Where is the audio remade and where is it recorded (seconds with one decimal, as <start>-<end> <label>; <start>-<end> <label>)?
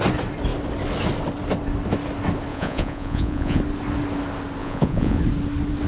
0.0-2.5 recorded; 2.5-3.6 remade; 3.6-4.6 recorded; 4.6-5.2 remade; 5.2-5.9 recorded